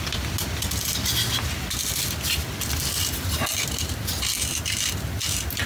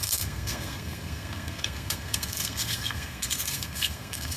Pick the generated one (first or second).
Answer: second